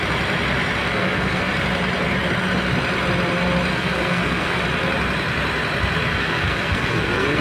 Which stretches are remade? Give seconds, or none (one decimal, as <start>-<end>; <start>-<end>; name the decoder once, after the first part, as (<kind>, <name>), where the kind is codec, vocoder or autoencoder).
0.8-1.5 (codec, SNAC); 3.7-4.6; 6.0-7.4